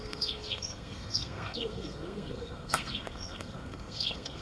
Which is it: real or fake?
fake